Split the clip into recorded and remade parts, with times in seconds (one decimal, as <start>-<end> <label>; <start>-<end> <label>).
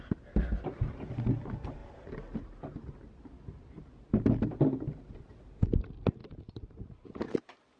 0.0-6.2 recorded; 6.2-7.8 remade